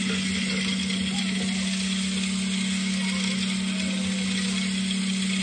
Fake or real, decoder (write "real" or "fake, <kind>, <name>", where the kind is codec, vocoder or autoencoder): real